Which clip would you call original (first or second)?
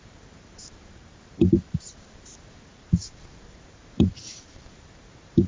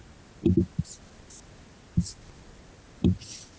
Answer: second